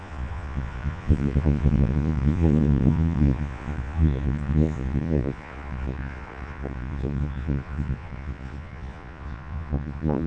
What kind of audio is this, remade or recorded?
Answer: remade